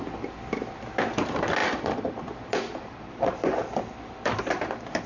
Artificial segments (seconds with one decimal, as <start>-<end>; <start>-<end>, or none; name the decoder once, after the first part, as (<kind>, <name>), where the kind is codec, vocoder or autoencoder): 1.6-5.1 (vocoder, BigVGAN v2)